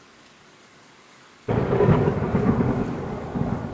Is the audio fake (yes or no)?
yes